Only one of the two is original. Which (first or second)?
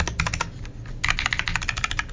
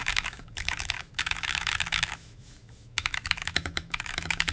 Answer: first